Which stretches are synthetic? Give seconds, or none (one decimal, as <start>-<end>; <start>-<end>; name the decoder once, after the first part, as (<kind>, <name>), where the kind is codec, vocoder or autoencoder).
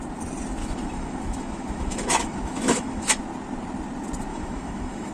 0.6-3.2 (autoencoder, DAC-VAE); 4.3-5.1